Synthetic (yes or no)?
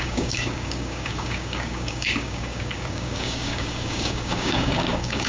yes